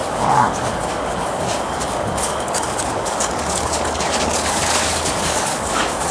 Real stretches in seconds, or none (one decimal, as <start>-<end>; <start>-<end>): none